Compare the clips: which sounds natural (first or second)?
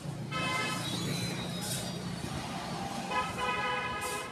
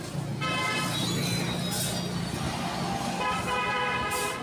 second